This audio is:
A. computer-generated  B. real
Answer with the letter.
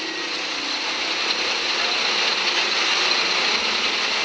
B